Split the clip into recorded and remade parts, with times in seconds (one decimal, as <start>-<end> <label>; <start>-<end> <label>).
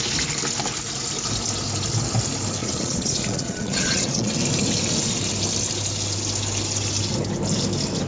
0.0-2.6 recorded; 2.6-4.3 remade; 4.3-8.1 recorded